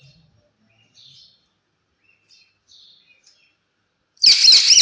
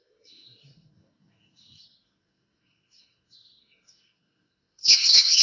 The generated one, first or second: second